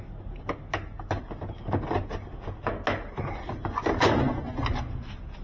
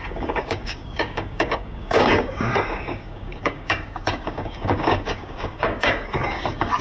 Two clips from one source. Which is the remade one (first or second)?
second